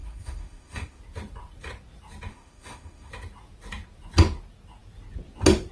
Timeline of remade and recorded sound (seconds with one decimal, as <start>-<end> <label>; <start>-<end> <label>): 0.0-1.0 remade; 1.0-2.3 recorded; 2.3-3.1 remade; 3.1-5.7 recorded